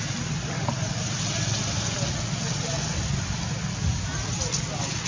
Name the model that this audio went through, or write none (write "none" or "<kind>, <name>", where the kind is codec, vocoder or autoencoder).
none